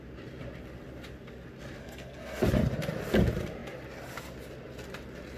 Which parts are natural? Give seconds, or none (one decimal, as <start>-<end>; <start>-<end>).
0.0-1.8; 2.4-5.4